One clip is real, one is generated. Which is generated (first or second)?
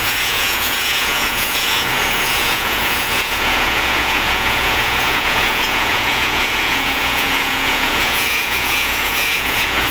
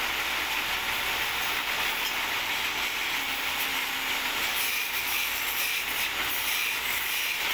first